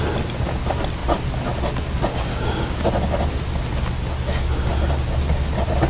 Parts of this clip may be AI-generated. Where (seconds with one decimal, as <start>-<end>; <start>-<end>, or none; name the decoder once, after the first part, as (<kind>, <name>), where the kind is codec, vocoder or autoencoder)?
2.3-2.9 (codec, DAC)